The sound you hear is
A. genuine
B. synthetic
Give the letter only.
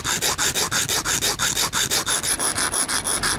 A